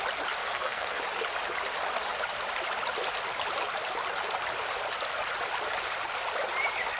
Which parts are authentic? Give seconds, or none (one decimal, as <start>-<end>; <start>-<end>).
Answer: 0.0-0.4; 1.0-7.0